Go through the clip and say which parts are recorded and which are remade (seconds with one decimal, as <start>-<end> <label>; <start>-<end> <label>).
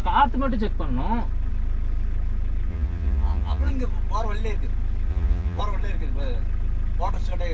0.0-2.7 recorded; 2.7-3.7 remade; 3.7-5.1 recorded; 5.1-5.6 remade; 5.6-7.5 recorded